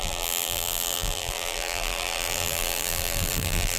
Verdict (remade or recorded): remade